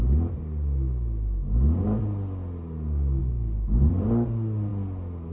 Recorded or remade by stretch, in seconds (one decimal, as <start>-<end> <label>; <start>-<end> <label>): 0.0-3.2 recorded; 3.2-3.9 remade; 3.9-5.3 recorded